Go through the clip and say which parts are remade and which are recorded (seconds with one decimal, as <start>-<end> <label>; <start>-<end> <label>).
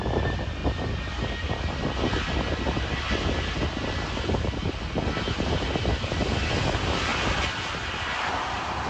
0.0-0.6 remade; 0.6-5.5 recorded; 5.5-7.1 remade; 7.1-8.3 recorded; 8.3-8.9 remade